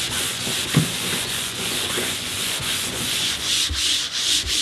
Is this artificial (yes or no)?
yes